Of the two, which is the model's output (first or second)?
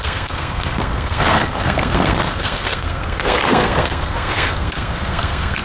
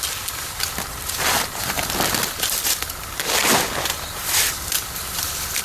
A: first